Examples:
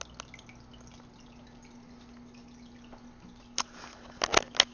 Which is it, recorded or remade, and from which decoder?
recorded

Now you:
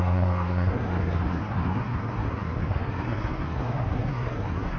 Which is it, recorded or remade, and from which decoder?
remade, codec, SNAC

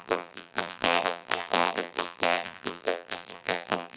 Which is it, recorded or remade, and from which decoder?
remade, vocoder, BigVGAN v2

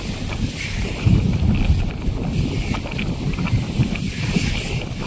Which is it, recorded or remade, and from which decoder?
recorded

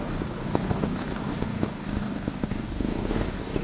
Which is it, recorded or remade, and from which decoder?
remade, codec, DAC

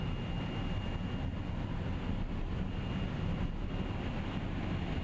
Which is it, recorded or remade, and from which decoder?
recorded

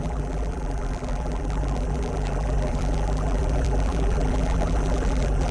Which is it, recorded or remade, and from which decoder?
remade, vocoder, BigVGAN v2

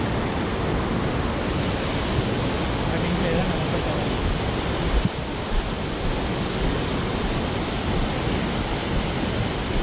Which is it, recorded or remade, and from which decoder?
recorded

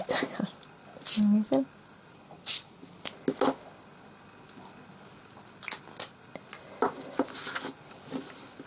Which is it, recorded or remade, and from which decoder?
recorded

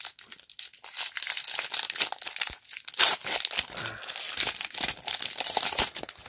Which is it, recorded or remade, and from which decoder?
recorded